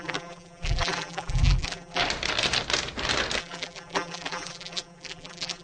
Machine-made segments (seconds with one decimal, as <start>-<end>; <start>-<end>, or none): 0.0-2.0; 3.4-5.6